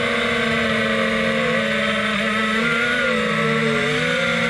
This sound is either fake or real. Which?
real